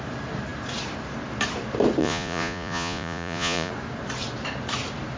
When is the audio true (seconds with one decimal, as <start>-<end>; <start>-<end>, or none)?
0.0-2.0; 3.7-5.2